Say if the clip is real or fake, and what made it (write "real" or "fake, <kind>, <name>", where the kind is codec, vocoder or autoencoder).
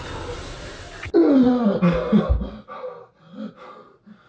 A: real